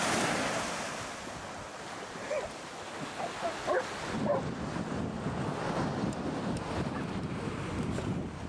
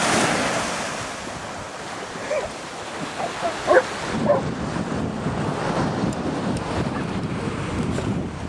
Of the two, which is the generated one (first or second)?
second